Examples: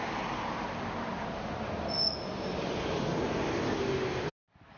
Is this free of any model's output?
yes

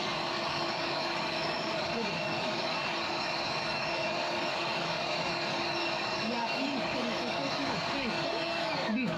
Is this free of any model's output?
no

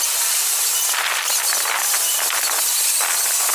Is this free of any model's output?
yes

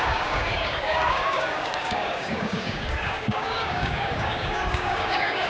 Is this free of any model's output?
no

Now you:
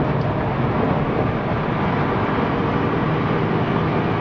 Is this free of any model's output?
yes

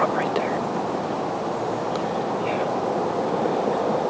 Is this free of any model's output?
yes